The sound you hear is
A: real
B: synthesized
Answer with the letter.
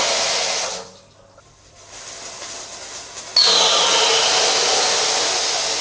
A